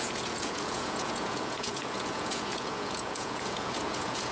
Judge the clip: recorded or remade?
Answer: remade